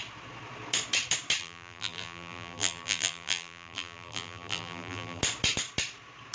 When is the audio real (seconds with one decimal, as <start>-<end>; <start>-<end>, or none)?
0.0-1.4; 5.2-6.3